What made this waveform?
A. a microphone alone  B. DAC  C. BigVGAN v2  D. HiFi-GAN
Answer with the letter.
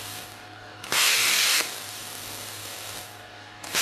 B